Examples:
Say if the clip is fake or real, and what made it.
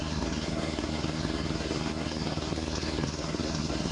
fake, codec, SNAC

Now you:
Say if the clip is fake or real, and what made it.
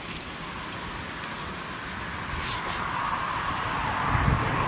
real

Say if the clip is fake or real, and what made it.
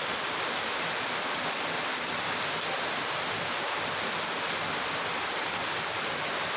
real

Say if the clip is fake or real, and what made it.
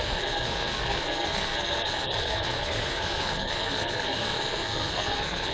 fake, codec, SNAC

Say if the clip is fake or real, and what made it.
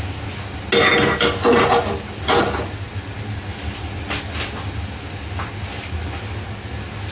real